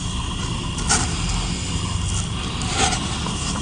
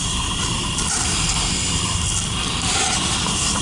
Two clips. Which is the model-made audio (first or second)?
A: second